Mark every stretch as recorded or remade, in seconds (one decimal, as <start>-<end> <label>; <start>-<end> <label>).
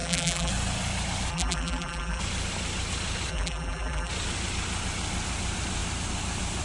0.0-0.5 remade; 0.5-1.3 recorded; 1.3-2.2 remade; 2.2-3.3 recorded; 3.3-4.1 remade; 4.1-6.6 recorded